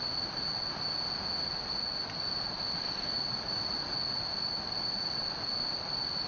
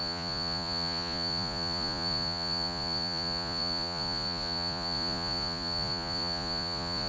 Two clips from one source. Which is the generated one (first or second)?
second